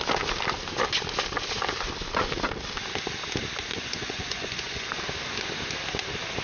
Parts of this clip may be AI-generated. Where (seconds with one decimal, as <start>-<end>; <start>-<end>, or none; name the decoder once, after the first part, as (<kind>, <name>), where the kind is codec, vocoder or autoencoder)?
3.7-4.9 (vocoder, Vocos)